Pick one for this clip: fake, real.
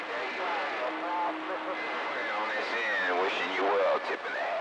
real